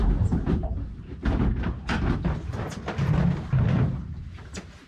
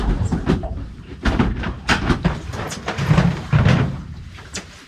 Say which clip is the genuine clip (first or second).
first